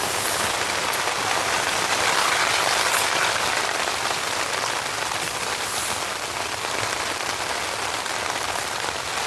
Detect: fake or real real